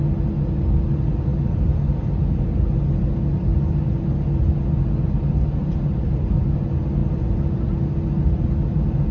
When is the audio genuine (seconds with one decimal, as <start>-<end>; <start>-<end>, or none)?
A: 0.0-9.1